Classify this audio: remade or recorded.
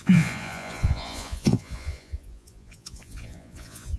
remade